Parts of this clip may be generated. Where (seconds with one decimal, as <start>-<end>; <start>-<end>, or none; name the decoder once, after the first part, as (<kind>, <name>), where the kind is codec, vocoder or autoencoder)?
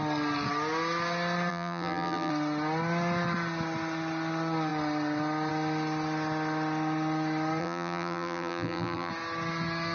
1.5-2.3 (vocoder, BigVGAN v2); 7.6-9.1